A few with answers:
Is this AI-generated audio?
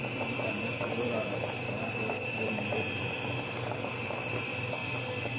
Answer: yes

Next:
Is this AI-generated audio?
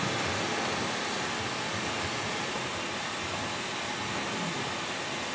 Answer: no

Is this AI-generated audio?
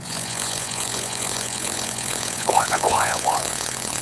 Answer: yes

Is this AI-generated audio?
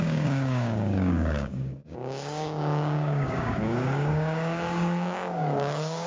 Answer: yes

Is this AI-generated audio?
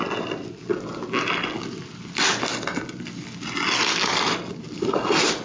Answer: no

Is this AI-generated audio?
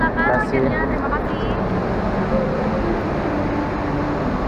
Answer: no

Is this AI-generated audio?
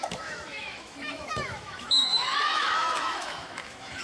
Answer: yes